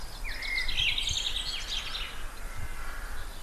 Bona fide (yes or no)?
yes